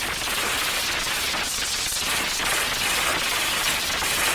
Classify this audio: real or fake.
real